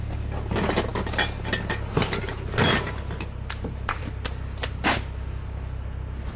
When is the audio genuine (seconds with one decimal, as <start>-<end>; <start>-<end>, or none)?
0.0-6.4